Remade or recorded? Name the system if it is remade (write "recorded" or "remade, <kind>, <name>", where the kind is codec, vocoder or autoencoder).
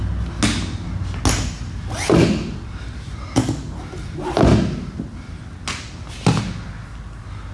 recorded